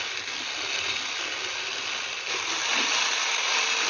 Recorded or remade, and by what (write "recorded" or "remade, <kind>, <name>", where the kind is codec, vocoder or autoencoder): recorded